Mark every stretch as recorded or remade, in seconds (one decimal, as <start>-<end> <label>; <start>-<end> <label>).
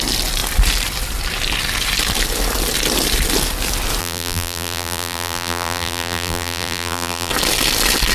0.0-4.0 recorded; 4.0-7.3 remade; 7.3-8.1 recorded